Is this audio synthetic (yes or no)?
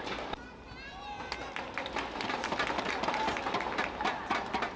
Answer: no